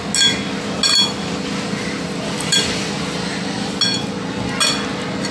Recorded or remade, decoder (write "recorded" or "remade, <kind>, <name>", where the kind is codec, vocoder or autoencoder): recorded